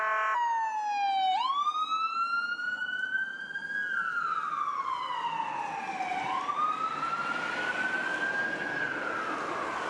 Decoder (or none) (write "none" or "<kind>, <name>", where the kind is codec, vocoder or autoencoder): none